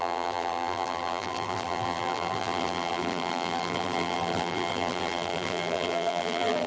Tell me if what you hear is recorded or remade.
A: remade